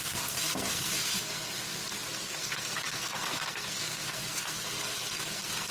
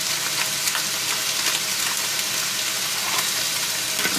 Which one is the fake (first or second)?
first